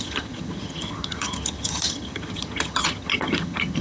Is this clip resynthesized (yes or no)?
yes